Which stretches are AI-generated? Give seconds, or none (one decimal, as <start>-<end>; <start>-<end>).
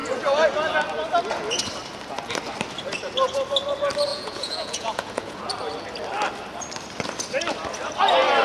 4.1-5.4